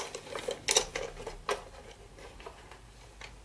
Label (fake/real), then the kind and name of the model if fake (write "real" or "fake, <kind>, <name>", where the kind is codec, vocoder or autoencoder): real